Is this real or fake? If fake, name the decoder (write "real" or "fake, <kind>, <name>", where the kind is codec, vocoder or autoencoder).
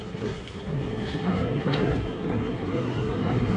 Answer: fake, codec, SNAC